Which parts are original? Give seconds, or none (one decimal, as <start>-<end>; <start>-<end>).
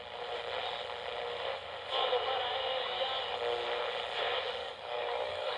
0.0-4.6